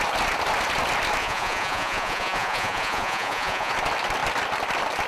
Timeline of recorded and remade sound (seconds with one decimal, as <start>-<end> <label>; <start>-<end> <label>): 0.0-1.2 recorded; 1.2-3.7 remade; 3.7-5.1 recorded